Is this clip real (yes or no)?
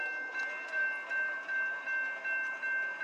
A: yes